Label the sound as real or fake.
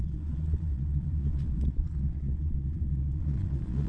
fake